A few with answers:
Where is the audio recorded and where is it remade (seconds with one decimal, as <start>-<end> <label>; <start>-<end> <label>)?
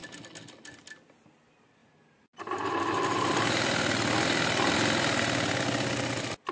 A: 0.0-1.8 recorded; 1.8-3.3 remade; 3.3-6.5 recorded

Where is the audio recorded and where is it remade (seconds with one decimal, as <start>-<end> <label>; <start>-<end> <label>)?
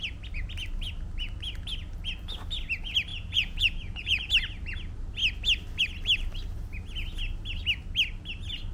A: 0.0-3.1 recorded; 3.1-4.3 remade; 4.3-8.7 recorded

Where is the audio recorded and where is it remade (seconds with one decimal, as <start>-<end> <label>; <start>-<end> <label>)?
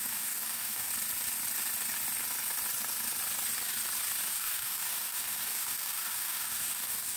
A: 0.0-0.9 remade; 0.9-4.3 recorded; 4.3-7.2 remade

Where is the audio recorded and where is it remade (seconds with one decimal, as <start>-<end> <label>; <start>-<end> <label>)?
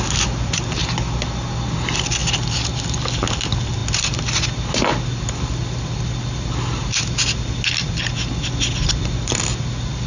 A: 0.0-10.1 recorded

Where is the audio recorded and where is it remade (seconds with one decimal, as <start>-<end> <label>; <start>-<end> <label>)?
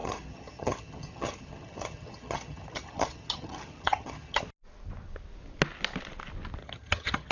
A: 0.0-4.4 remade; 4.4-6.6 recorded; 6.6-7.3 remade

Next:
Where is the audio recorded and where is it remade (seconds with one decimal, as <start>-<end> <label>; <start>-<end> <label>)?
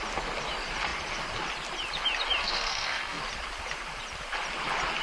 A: 0.0-2.4 recorded; 2.4-3.2 remade; 3.2-5.0 recorded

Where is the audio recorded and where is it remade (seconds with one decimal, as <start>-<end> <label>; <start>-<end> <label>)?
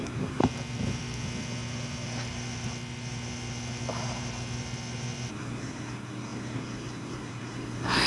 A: 0.0-0.4 remade; 0.4-5.3 recorded; 5.3-8.1 remade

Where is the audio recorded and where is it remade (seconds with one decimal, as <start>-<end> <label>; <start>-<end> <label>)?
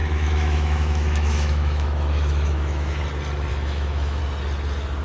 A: 0.0-3.0 remade; 3.0-3.5 recorded; 3.5-4.2 remade; 4.2-5.0 recorded